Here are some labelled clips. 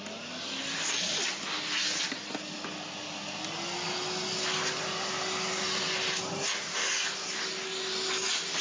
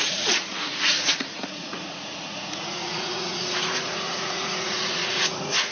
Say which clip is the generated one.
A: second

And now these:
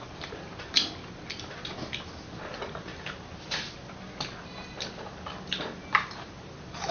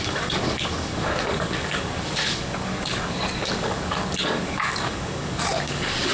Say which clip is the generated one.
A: second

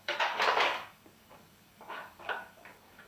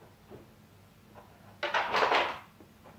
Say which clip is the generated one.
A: first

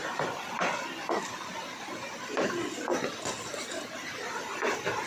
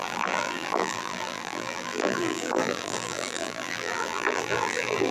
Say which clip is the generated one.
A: second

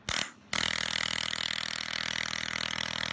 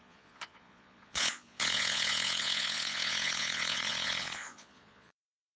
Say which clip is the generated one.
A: second